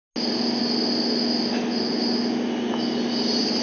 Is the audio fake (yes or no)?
no